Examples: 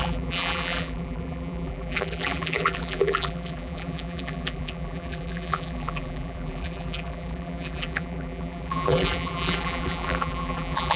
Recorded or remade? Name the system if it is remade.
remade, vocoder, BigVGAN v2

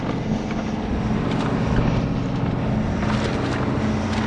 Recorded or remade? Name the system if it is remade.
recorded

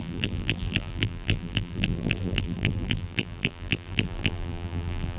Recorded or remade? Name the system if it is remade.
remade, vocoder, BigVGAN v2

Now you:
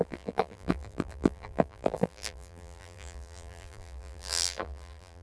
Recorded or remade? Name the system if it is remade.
remade, vocoder, BigVGAN v2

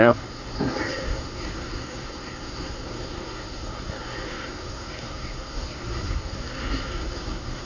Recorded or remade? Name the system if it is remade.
remade, codec, SNAC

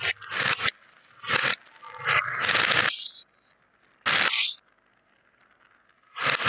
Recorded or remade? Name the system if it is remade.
recorded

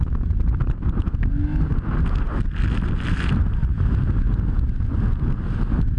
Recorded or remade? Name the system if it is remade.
recorded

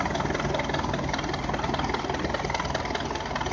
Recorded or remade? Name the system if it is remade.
recorded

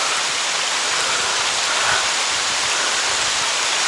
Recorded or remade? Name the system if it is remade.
recorded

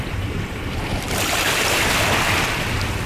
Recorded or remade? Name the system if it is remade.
remade, vocoder, BigVGAN v2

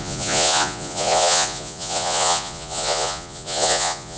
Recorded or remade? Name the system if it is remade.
remade, vocoder, Vocos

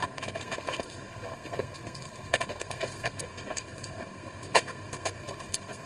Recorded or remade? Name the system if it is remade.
remade, codec, SNAC